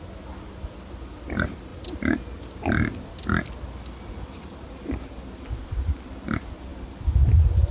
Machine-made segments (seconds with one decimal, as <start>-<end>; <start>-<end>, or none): 0.0-1.7; 4.1-6.7